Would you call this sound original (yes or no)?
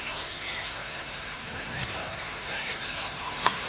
no